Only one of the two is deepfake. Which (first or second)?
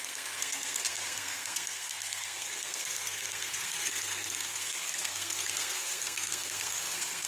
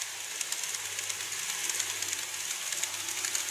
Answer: first